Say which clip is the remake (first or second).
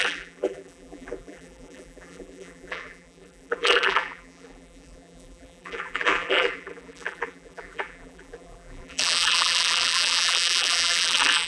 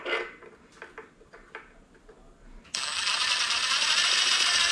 first